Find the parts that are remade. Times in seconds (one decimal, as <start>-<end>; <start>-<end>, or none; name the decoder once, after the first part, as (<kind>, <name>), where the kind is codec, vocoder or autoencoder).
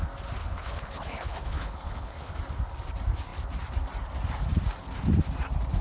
0.4-2.3 (codec, HILCodec)